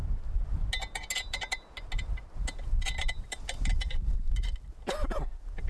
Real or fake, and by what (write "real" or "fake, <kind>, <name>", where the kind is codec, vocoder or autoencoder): real